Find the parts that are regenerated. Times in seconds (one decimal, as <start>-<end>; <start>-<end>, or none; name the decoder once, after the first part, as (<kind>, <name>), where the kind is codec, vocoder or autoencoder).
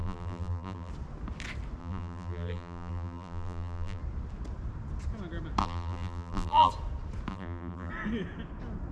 0.0-0.9 (vocoder, BigVGAN v2); 1.8-4.0; 5.6-6.7; 7.3-7.9